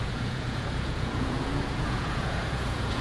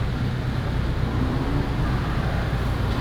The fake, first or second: first